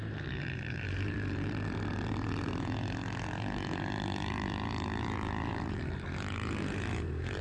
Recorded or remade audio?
remade